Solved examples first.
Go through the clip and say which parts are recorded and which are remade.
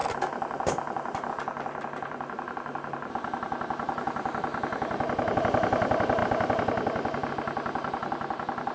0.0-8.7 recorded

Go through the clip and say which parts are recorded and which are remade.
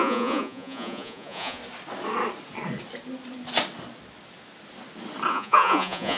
0.0-1.6 remade; 1.6-5.3 recorded; 5.3-6.2 remade